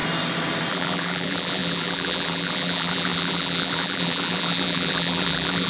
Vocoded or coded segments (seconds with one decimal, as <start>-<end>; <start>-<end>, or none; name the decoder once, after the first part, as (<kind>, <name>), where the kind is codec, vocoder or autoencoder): 0.7-5.7 (vocoder, BigVGAN v2)